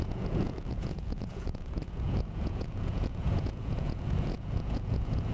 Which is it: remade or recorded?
remade